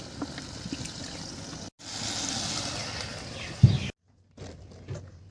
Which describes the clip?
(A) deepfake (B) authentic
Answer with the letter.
B